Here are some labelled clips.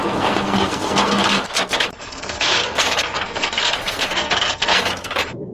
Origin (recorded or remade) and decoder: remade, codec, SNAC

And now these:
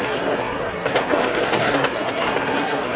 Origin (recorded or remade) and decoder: remade, codec, SNAC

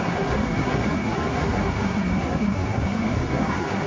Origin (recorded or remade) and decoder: remade, codec, SNAC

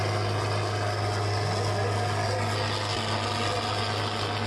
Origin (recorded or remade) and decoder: recorded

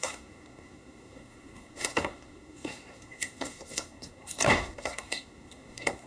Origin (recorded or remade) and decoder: remade, codec, SNAC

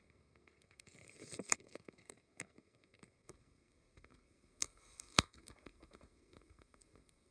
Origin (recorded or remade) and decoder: remade, codec, SNAC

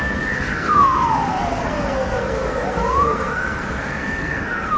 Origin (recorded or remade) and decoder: remade, codec, SNAC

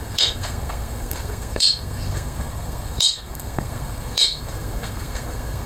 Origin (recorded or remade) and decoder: remade, codec, SNAC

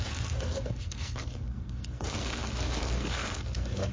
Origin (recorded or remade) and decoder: remade, codec, SNAC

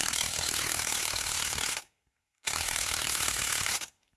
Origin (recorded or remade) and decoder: remade, codec, SNAC